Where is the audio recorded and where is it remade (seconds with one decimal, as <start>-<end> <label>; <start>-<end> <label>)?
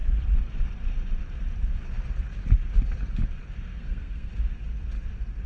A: 0.0-3.7 recorded; 3.7-4.3 remade; 4.3-5.5 recorded